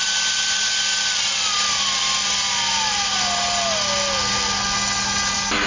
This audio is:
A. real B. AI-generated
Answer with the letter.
A